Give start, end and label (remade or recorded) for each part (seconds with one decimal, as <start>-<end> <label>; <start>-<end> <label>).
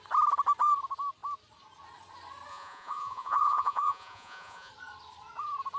0.0-2.5 recorded; 2.5-4.7 remade; 4.7-5.8 recorded